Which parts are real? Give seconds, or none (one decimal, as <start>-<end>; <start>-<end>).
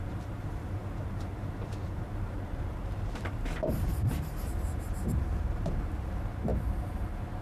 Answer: 6.5-7.4